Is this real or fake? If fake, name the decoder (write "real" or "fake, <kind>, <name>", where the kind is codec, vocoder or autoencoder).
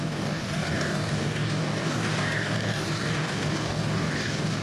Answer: fake, codec, DAC